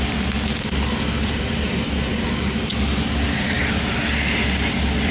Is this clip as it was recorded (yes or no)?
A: yes